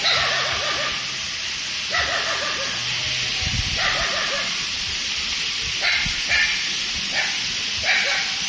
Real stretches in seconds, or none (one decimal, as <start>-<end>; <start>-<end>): 0.0-8.5